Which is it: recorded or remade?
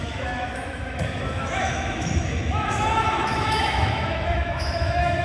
remade